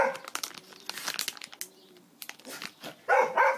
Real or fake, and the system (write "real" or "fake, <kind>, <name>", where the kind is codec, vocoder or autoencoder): real